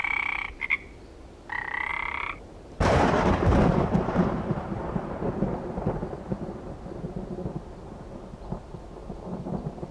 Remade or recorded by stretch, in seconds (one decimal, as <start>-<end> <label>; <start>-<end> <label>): 0.0-1.9 recorded; 1.9-5.3 remade; 5.3-9.9 recorded